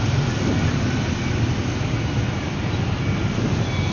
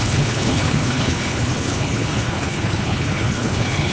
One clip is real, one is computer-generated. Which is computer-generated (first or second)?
second